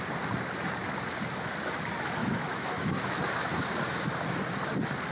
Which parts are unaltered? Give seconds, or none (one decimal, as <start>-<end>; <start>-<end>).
0.0-2.2; 3.2-5.1